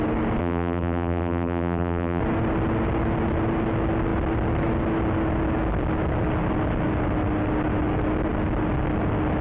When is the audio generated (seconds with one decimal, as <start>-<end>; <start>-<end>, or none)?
0.4-2.2